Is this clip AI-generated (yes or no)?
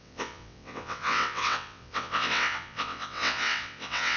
yes